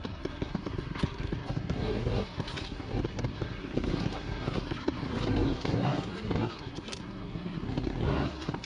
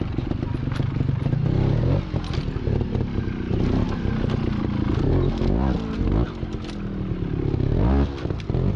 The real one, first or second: second